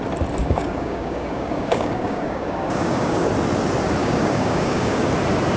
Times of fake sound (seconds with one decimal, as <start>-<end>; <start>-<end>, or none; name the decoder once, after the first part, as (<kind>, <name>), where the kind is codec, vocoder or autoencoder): 0.4-3.3 (codec, DAC); 4.0-5.1